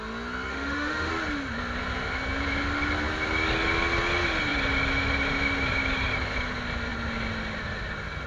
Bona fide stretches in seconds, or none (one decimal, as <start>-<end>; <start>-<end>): 0.0-0.5; 1.1-8.3